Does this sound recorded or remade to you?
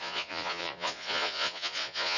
remade